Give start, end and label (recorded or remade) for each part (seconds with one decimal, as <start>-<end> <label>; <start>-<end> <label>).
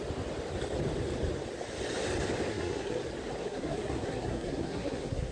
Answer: 0.0-2.5 recorded; 2.5-3.0 remade; 3.0-3.4 recorded; 3.4-5.3 remade